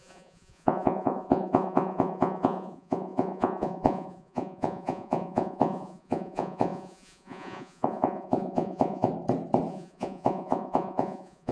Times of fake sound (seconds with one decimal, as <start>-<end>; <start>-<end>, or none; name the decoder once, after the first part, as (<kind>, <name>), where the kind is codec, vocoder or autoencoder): 0.0-9.1 (vocoder, Vocos); 9.7-11.5